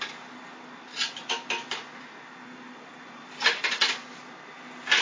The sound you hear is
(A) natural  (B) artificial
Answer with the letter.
A